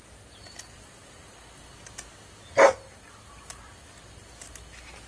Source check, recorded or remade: recorded